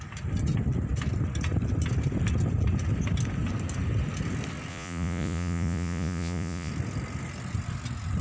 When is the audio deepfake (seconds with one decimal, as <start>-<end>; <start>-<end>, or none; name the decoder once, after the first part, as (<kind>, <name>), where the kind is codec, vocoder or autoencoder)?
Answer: 4.7-6.7 (vocoder, Vocos)